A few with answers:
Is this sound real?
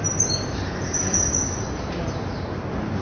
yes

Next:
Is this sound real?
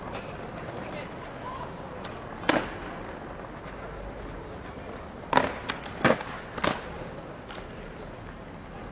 yes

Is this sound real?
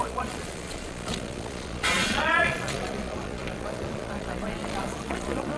no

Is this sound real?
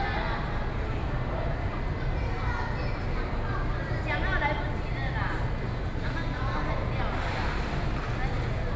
yes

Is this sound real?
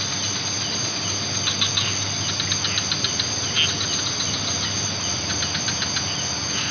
yes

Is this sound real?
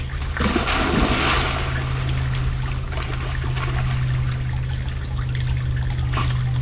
yes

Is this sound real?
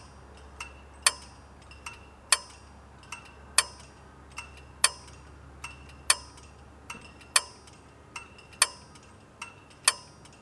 yes